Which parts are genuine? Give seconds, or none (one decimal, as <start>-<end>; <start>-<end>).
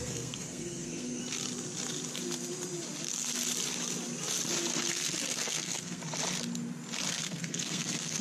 1.2-5.3; 6.0-7.1